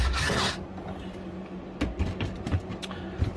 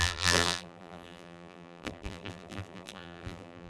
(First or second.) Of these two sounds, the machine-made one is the second